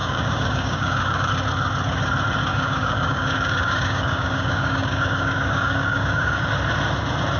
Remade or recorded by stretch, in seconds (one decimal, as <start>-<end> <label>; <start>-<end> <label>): 0.0-1.3 remade; 1.3-2.5 recorded; 2.5-6.5 remade; 6.5-7.4 recorded